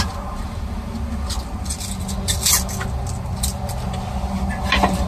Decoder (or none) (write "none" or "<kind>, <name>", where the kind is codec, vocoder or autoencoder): none